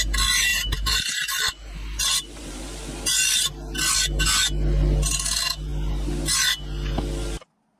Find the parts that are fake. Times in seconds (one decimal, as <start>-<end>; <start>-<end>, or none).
0.5-2.6